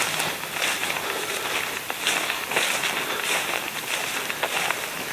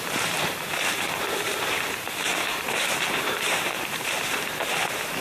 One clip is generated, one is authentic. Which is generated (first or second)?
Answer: second